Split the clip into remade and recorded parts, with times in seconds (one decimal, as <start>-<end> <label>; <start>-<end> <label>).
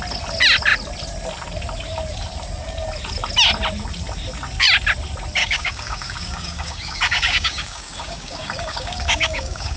0.0-5.4 recorded; 5.4-9.8 remade